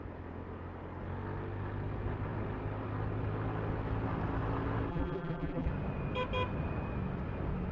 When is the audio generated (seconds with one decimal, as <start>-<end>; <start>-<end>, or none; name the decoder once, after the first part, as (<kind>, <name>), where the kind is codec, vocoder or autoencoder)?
4.9-5.7 (vocoder, BigVGAN v2)